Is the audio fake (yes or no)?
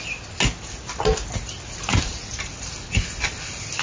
no